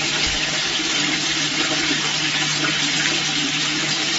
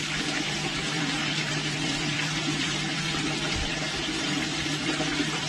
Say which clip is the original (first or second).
first